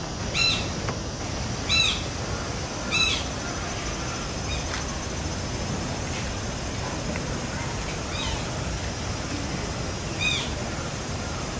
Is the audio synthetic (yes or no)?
no